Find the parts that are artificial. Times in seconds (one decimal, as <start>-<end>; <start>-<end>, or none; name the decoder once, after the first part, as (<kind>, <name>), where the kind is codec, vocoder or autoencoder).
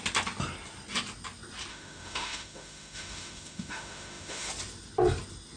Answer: 1.7-4.5 (autoencoder, DAC-VAE)